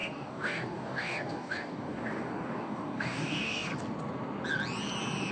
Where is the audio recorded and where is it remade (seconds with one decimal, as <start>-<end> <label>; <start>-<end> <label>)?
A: 0.0-3.7 remade; 3.7-5.3 recorded